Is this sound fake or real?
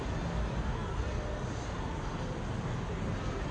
real